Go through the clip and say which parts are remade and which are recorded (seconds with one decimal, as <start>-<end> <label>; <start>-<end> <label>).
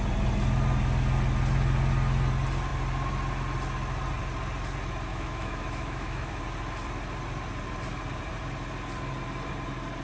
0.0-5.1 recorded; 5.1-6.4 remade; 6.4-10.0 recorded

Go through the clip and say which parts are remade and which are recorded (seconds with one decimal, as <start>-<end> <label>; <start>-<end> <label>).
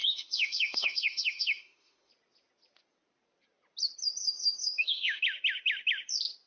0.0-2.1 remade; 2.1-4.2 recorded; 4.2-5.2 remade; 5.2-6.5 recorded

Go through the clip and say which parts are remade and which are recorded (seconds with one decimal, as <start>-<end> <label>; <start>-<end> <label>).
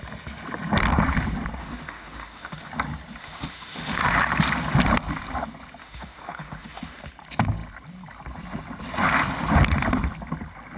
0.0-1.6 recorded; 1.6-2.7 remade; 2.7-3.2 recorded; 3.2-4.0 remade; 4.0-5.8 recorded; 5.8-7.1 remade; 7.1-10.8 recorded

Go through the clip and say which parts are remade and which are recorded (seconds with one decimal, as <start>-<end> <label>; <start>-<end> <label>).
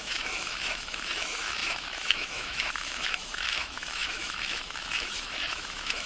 0.0-6.1 remade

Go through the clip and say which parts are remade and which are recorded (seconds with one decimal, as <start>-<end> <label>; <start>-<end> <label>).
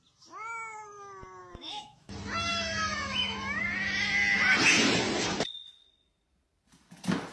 0.0-1.4 recorded; 1.4-2.1 remade; 2.1-2.5 recorded; 2.5-3.6 remade; 3.6-7.3 recorded